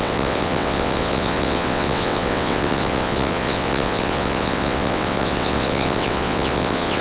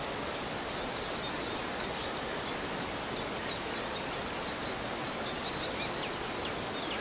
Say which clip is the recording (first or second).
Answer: second